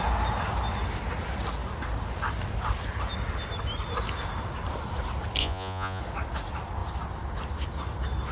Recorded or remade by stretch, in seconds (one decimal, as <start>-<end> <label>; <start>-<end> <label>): 0.0-5.4 recorded; 5.4-6.0 remade; 6.0-8.3 recorded